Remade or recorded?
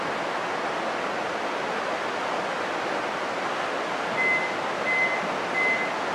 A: recorded